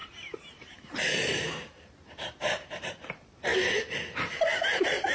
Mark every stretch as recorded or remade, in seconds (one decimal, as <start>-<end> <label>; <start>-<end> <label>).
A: 0.0-2.9 remade; 2.9-5.1 recorded